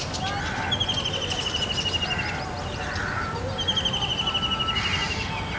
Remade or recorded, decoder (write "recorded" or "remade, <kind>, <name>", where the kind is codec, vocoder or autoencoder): recorded